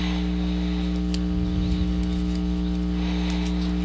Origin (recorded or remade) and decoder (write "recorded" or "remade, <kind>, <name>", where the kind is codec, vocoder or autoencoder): recorded